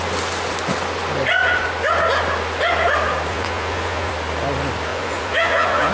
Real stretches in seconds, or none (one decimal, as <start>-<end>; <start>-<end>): 0.0-3.3; 4.1-4.9